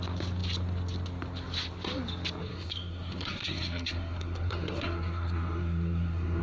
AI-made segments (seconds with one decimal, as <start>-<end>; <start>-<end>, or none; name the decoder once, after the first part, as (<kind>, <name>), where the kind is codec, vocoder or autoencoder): 2.4-6.4 (codec, SNAC)